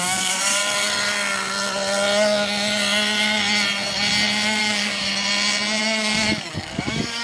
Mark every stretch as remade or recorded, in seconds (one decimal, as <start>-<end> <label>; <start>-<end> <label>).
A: 0.0-0.6 remade; 0.6-4.6 recorded; 4.6-5.1 remade; 5.1-5.8 recorded; 5.8-7.2 remade